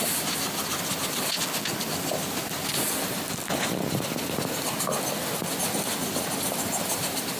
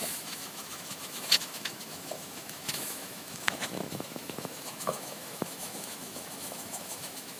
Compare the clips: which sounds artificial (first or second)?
second